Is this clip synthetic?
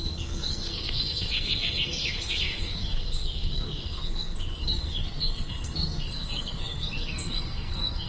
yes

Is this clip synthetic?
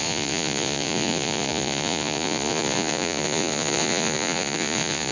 yes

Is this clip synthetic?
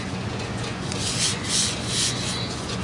yes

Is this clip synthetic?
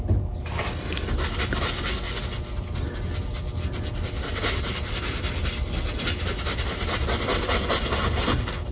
no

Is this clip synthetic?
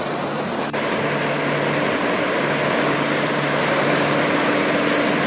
no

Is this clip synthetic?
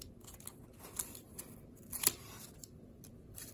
no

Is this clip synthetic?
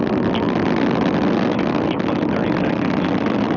no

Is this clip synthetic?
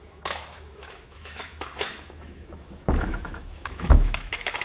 yes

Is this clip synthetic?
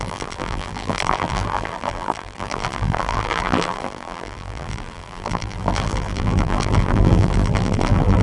yes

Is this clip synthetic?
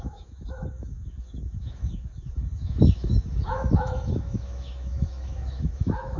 yes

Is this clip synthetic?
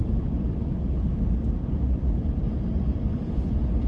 no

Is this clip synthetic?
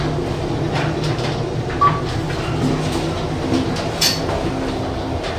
no